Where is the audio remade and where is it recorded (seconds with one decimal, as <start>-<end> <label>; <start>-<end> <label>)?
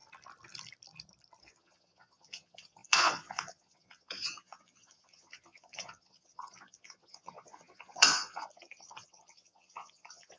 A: 0.0-1.4 recorded; 1.4-10.4 remade